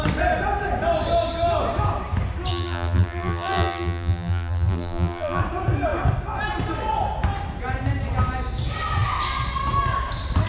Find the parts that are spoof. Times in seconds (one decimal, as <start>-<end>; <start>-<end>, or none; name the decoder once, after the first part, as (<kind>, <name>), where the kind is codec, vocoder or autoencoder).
2.5-5.4 (vocoder, BigVGAN v2)